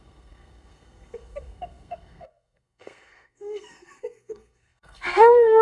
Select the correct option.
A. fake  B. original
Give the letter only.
A